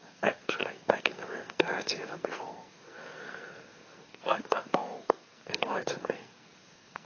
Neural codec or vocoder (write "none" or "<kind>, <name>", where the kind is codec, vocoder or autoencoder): codec, SNAC